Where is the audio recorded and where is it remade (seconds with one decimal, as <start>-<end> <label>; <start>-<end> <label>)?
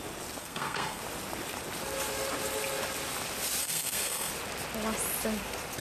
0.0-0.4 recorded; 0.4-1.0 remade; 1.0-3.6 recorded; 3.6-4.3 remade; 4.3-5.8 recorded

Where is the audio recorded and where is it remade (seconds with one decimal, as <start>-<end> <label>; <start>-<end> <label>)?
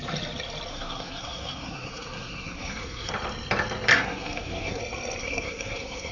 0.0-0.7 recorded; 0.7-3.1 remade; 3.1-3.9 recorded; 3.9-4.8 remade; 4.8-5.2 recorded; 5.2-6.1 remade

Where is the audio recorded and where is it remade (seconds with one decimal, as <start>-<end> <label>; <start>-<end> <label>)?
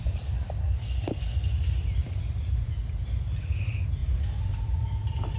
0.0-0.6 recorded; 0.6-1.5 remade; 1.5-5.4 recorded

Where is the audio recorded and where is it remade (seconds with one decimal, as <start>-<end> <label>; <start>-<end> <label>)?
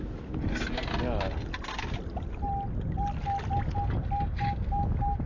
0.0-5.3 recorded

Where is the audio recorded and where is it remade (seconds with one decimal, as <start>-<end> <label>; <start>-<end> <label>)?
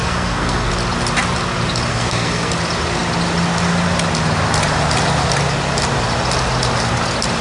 0.0-0.7 remade; 0.7-1.9 recorded; 1.9-2.5 remade; 2.5-7.4 recorded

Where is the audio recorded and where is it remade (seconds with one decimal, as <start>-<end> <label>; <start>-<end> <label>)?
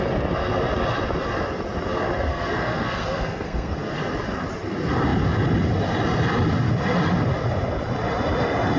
0.0-2.3 recorded; 2.3-3.9 remade; 3.9-8.8 recorded